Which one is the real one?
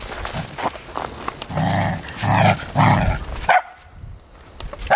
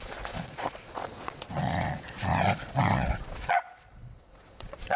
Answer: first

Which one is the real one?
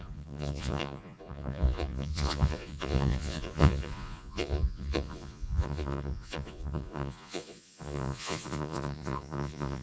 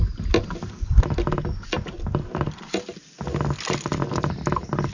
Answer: second